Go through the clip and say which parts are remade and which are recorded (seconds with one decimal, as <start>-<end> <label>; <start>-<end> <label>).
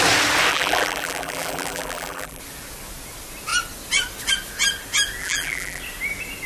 0.0-0.5 recorded; 0.5-2.4 remade; 2.4-5.2 recorded; 5.2-5.8 remade; 5.8-6.5 recorded